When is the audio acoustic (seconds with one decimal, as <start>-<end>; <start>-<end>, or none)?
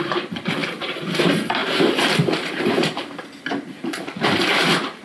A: none